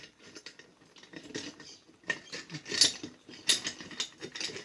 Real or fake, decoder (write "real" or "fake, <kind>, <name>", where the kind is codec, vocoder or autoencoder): real